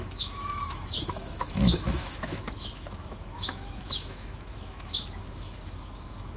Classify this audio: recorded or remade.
remade